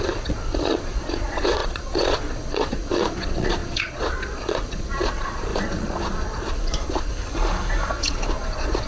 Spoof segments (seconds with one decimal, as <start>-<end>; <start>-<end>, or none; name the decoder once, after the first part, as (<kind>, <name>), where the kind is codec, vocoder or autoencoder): 0.0-7.1 (vocoder, Vocos); 7.9-8.9